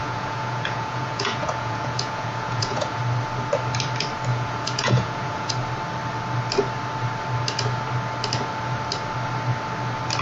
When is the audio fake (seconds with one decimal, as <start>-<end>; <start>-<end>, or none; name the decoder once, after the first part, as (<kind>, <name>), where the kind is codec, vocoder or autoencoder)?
0.0-3.0 (vocoder, Vocos); 4.3-5.5